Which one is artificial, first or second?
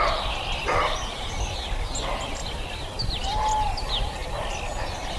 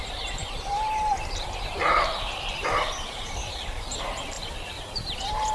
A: second